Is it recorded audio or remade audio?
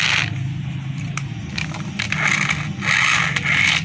recorded